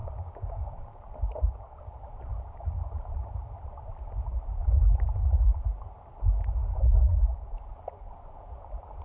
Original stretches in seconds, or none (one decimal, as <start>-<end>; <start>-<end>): 0.8-1.3; 1.8-9.0

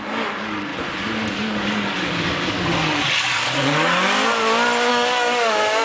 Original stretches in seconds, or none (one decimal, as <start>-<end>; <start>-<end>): 0.7-1.3; 4.3-4.9